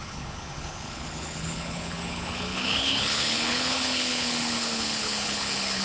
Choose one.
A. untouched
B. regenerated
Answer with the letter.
B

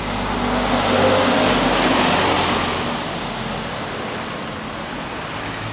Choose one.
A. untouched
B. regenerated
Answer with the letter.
A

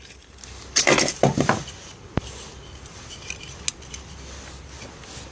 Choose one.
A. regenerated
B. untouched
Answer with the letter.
B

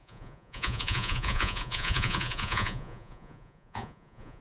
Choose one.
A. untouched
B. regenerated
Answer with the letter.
B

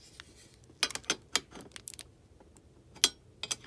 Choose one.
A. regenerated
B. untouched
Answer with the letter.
B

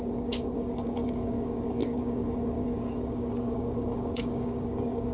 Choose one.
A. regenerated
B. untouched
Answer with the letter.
A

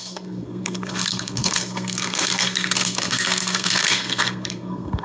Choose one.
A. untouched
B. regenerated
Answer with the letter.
B